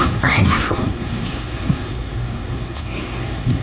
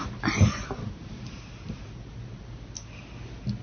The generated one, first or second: first